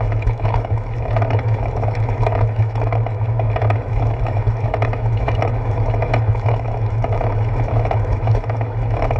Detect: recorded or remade remade